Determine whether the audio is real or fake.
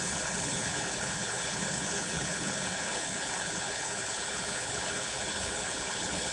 fake